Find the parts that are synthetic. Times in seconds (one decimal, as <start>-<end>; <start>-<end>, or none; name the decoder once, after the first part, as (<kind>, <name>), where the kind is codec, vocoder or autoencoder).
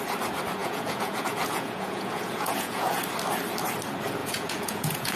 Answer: 0.6-3.0 (vocoder, Vocos); 4.2-5.2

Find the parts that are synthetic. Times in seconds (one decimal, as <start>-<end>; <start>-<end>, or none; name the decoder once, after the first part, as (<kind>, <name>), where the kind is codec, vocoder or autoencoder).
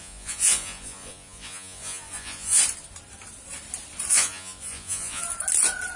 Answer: 0.0-2.6 (vocoder, Vocos); 4.1-5.2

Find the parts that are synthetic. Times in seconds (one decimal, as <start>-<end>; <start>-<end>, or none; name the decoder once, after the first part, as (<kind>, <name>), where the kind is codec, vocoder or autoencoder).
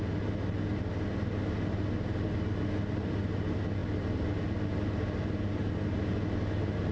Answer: none